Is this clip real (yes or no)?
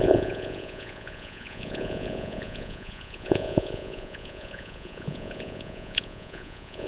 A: no